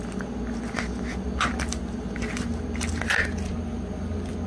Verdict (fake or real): real